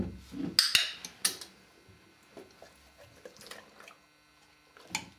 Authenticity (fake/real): real